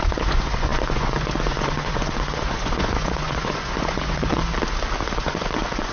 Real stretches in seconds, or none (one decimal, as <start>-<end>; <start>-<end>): 4.4-5.2